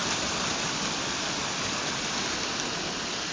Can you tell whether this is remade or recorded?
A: recorded